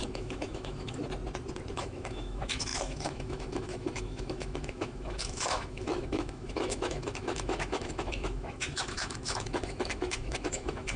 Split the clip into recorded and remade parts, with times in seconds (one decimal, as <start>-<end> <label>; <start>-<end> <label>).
0.0-1.0 remade; 1.0-1.7 recorded; 1.7-11.0 remade

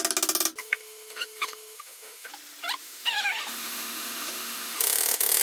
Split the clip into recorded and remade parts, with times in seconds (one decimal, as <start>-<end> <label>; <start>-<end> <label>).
0.0-0.6 recorded; 0.6-2.3 remade; 2.3-2.8 recorded; 2.8-5.4 remade